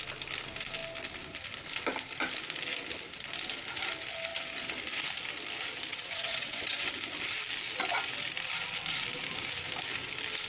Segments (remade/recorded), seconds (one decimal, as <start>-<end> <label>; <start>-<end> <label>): 0.0-5.9 recorded; 5.9-6.9 remade; 6.9-10.5 recorded